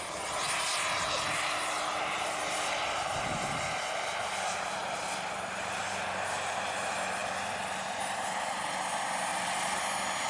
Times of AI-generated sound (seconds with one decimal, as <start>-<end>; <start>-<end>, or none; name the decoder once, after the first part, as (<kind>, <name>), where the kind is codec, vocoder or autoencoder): 4.8-5.8 (vocoder, BigVGAN v2); 9.3-9.8